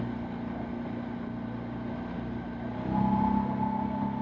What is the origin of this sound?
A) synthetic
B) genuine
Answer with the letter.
B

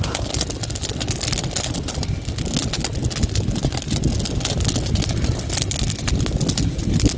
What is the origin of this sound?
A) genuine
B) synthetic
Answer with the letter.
A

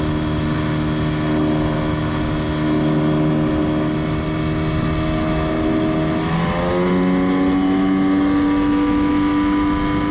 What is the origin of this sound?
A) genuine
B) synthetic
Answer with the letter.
A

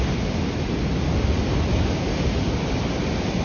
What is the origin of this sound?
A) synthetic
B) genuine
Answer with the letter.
B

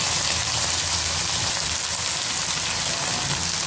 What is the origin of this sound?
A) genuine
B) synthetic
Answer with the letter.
A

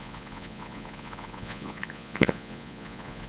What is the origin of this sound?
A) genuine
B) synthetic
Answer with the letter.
B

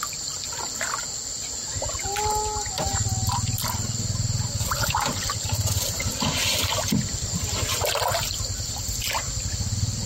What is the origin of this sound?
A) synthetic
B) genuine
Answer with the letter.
B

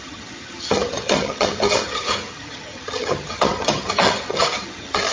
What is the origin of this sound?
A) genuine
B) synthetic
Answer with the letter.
B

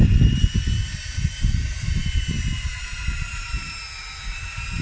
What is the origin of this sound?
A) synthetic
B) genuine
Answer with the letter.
B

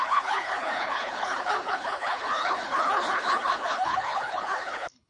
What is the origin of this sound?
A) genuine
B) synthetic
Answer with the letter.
B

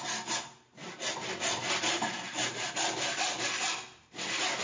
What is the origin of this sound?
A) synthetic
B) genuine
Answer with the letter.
B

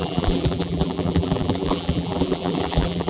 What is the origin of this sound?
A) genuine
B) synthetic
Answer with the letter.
B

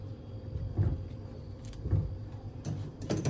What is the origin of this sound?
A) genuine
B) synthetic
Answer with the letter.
B